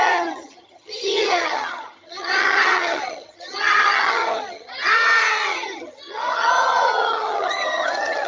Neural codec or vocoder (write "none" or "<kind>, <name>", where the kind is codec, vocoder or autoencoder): vocoder, HiFi-GAN